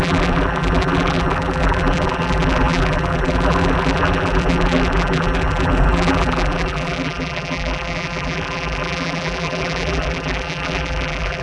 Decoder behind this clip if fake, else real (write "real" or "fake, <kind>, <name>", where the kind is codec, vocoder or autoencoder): fake, vocoder, BigVGAN v2